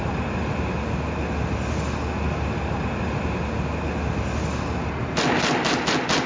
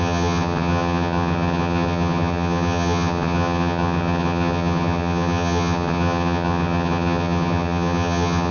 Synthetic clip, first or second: second